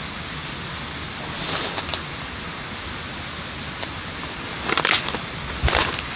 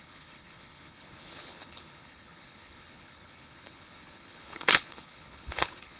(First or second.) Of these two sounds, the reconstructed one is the second